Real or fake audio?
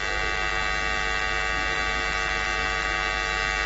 real